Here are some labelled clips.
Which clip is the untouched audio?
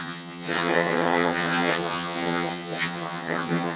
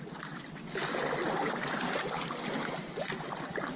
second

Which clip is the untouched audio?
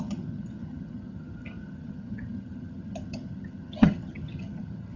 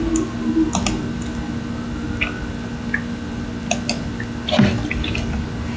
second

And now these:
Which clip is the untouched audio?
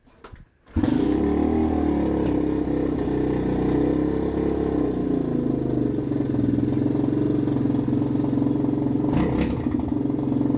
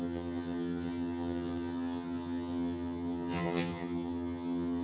first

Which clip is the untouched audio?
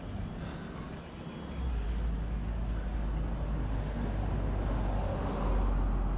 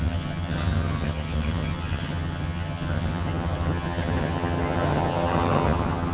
first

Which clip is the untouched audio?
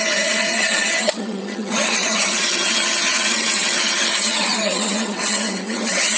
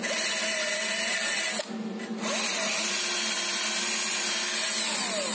second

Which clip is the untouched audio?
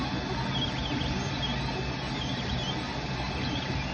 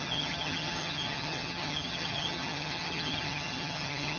first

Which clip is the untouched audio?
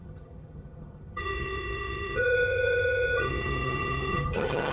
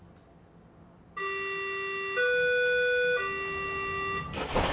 second